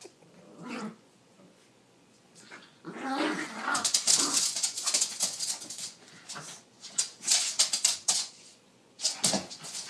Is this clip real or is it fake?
fake